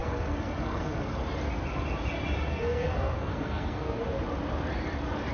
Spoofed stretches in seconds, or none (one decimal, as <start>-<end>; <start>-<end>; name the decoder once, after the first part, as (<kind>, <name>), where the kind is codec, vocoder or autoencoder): 0.0-1.2 (codec, SNAC); 2.5-4.0